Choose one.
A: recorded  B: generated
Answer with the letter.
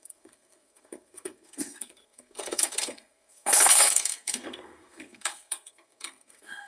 B